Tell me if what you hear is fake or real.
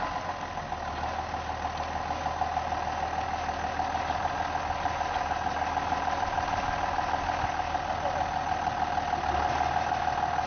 real